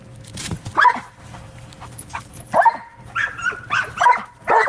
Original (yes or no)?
yes